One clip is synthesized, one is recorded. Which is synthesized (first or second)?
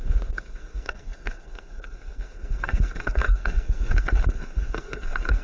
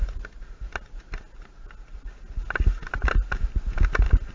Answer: first